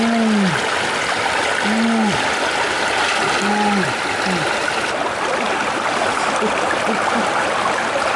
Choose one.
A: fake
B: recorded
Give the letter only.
B